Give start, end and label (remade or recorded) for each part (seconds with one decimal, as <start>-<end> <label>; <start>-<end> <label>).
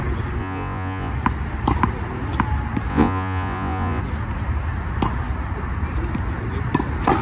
0.0-0.4 recorded; 0.4-1.1 remade; 1.1-2.9 recorded; 2.9-4.0 remade; 4.0-7.2 recorded